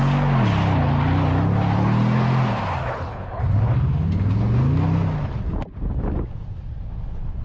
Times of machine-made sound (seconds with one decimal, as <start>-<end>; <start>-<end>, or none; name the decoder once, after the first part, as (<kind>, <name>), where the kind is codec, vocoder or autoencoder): 2.8-3.4 (codec, HILCodec)